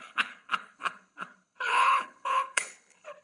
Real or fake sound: fake